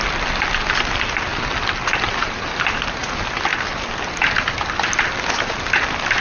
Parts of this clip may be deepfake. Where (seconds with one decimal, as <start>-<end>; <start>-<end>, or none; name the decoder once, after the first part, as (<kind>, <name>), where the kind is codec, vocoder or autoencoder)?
2.2-3.0 (vocoder, BigVGAN v2)